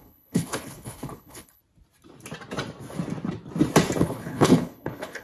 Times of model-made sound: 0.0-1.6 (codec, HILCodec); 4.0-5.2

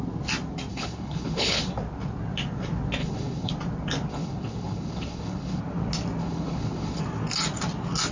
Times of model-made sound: 0.7-1.6 (codec, HILCodec); 3.0-3.5; 4.1-5.6; 6.2-7.0

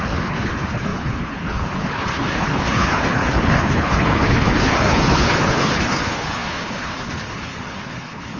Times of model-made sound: 0.0-8.4 (codec, HILCodec)

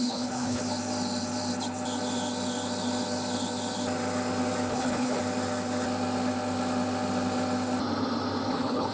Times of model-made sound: 0.0-0.6 (codec, HILCodec); 4.7-5.2; 8.5-8.9

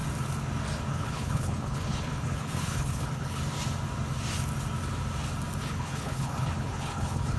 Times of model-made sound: 0.9-3.4 (codec, HILCodec); 5.6-7.4

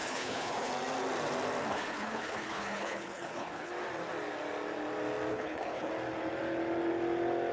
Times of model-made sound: 0.0-0.7 (codec, HILCodec); 1.7-3.7; 5.3-5.9